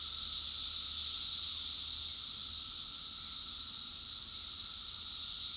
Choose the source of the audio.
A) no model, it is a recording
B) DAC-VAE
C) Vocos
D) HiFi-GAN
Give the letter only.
A